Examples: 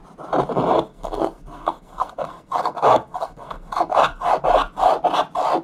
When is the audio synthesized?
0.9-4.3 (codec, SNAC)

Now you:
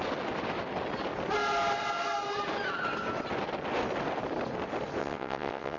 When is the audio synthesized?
5.0-5.8 (vocoder, WaveNeXt)

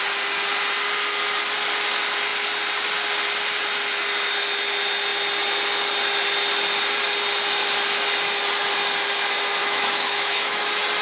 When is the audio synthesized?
9.6-10.6 (autoencoder, DAC-VAE)